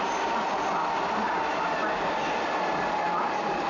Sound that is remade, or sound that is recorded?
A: recorded